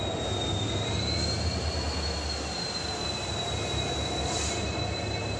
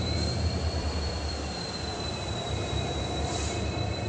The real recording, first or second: first